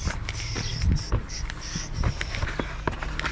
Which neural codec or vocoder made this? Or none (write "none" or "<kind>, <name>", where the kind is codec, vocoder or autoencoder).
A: none